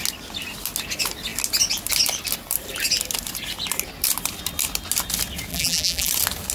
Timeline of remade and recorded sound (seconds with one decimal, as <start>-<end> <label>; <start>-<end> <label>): 0.0-5.5 recorded; 5.5-6.1 remade; 6.1-6.5 recorded